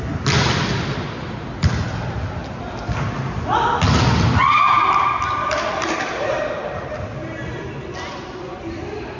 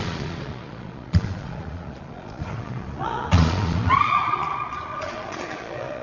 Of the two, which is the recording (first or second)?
first